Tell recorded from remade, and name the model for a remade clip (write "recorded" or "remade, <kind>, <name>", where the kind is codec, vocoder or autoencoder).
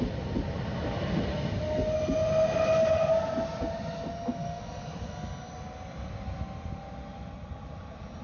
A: recorded